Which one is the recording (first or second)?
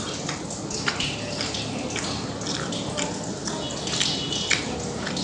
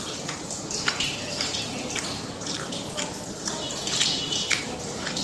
first